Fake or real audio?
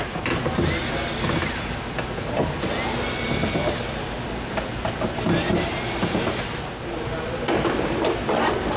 real